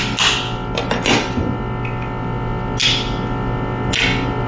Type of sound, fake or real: real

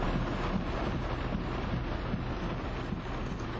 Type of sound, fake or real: real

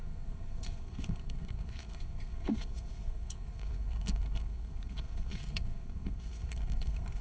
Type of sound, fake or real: fake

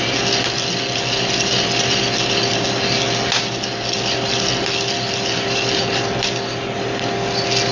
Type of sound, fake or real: real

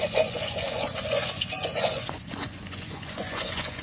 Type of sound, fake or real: fake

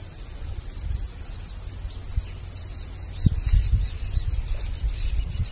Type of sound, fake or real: real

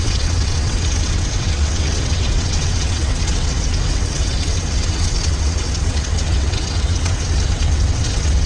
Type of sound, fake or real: fake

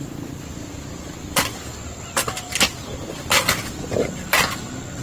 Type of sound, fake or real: real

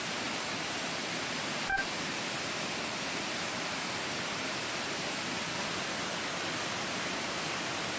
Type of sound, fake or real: fake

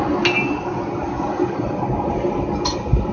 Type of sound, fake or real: real